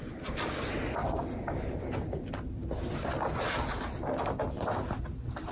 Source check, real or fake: real